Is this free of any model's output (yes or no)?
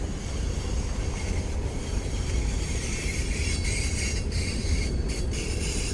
no